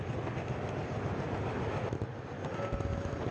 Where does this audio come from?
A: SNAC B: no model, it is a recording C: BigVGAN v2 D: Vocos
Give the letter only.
B